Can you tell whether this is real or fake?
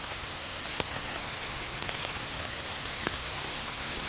fake